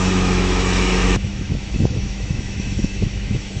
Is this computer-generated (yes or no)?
yes